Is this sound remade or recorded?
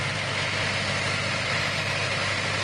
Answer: recorded